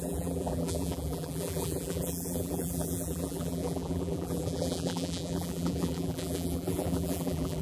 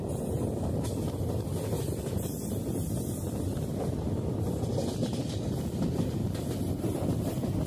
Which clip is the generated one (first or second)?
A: first